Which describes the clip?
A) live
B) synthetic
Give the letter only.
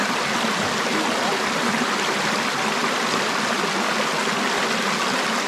A